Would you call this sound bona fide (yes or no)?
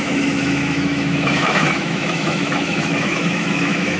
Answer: no